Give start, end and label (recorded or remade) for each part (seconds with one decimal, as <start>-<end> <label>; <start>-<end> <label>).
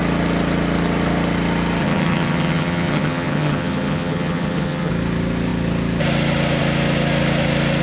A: 0.0-1.8 recorded; 1.8-4.9 remade; 4.9-7.8 recorded